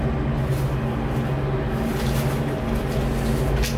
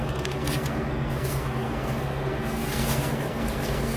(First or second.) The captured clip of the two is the first